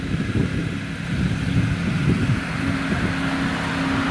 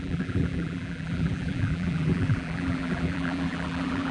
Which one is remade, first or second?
second